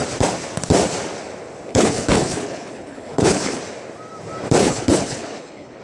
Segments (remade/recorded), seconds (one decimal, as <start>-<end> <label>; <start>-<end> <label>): 0.0-1.7 recorded; 1.7-3.6 remade; 3.6-4.6 recorded; 4.6-5.8 remade